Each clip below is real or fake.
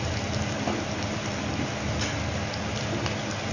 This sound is real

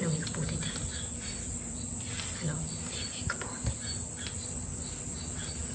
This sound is real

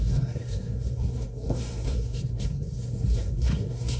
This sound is fake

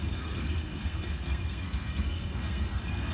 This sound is fake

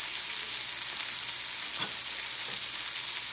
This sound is real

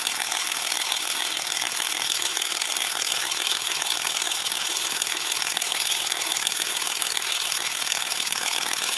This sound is fake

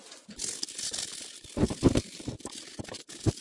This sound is real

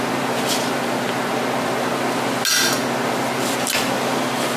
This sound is real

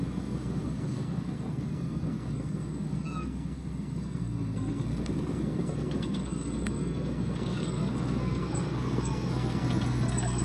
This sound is fake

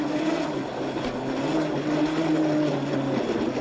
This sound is real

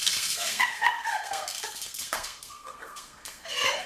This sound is fake